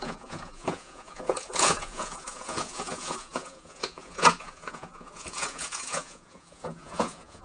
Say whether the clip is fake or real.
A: fake